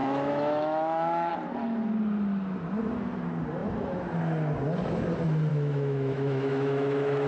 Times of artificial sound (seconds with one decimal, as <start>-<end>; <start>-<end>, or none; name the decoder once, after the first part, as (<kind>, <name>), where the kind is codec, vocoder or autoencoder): 0.0-1.3 (autoencoder, DAC-VAE); 5.5-7.3